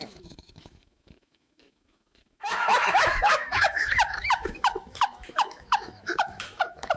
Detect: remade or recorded remade